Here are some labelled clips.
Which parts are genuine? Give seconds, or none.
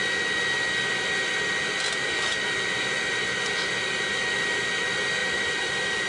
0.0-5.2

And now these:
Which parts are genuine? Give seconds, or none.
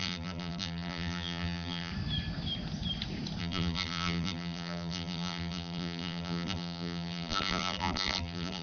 1.9-3.4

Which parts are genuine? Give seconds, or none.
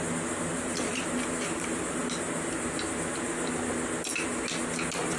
0.0-0.5; 2.0-5.2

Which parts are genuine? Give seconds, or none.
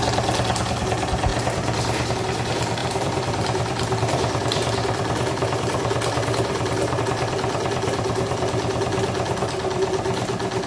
0.0-2.8; 7.0-10.7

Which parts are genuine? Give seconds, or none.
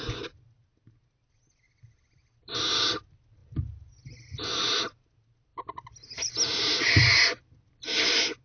0.0-8.4